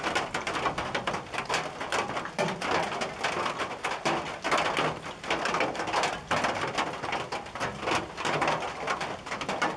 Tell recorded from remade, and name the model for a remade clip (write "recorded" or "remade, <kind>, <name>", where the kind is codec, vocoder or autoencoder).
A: recorded